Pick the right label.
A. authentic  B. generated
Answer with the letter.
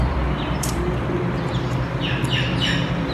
B